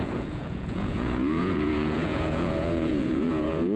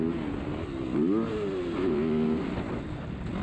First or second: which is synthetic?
first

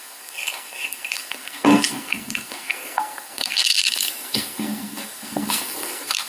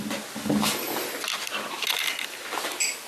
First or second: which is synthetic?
first